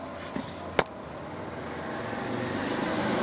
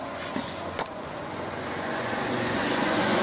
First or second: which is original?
first